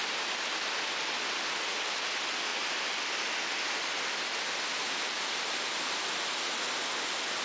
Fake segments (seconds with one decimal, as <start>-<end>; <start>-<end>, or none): none